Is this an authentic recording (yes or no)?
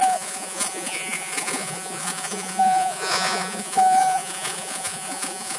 no